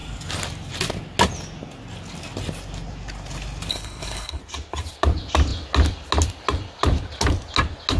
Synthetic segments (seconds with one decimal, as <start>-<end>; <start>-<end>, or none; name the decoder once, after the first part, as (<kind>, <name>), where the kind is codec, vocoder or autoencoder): 3.7-4.4 (codec, HILCodec)